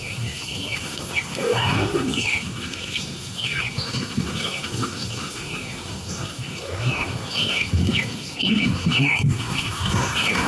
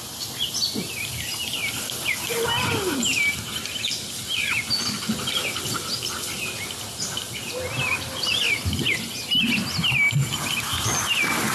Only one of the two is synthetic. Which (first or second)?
first